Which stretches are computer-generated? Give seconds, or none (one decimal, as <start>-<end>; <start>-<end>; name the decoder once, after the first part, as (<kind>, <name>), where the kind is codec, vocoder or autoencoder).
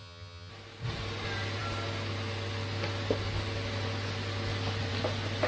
0.0-0.5 (vocoder, HiFi-GAN)